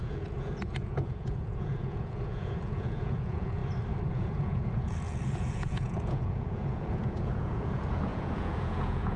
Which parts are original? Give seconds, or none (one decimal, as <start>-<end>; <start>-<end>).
3.6-4.1